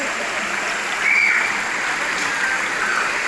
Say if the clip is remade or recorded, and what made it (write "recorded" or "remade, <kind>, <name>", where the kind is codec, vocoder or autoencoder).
recorded